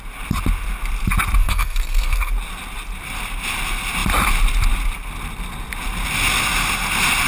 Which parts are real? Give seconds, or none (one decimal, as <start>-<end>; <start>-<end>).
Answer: 0.0-1.4; 2.3-7.3